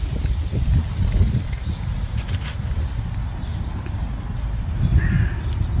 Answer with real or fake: real